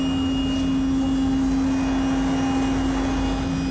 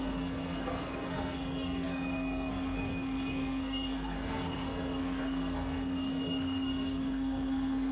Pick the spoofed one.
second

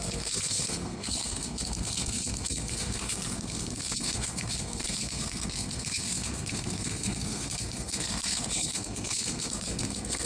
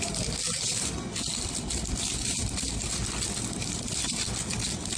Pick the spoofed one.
first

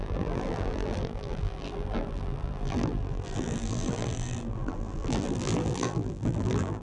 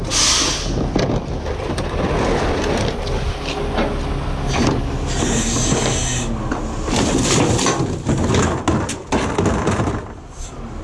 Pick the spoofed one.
first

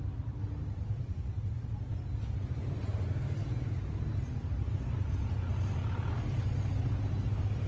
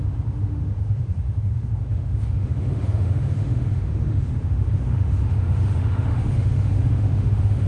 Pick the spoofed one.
second